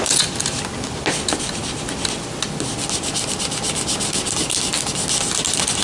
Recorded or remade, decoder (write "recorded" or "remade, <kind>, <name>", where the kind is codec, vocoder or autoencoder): recorded